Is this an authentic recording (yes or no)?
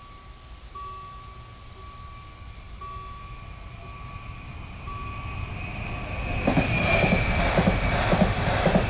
yes